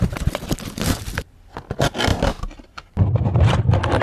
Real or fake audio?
real